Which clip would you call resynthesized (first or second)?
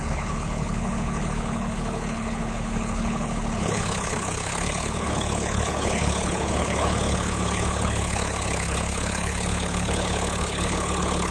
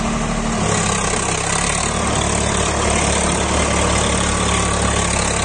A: first